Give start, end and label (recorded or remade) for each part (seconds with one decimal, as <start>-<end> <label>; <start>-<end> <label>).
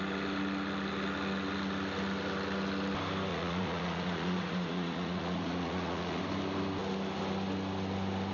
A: 0.0-3.3 recorded; 3.3-6.2 remade; 6.2-8.3 recorded